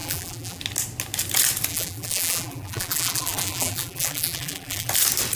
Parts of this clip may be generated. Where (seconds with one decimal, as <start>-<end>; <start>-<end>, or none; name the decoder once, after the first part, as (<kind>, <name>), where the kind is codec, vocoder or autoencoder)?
0.0-0.6 (vocoder, BigVGAN v2); 1.7-4.9